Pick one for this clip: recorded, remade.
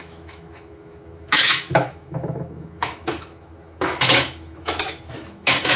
remade